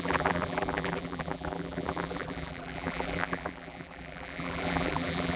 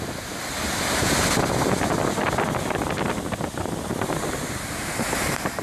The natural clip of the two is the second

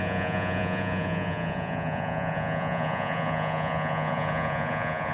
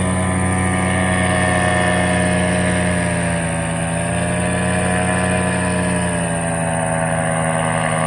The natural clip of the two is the second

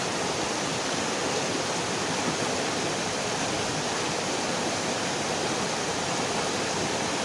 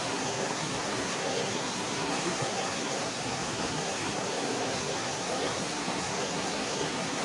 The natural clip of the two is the first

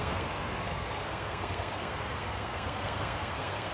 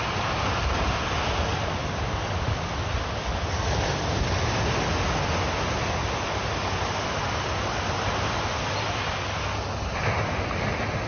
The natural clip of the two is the second